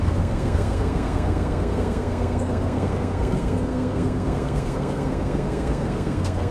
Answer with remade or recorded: remade